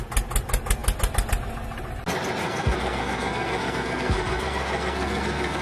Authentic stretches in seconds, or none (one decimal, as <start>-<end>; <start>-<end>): 0.0-2.4